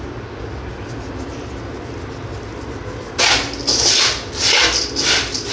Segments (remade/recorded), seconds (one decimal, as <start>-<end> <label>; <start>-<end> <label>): 0.0-5.5 recorded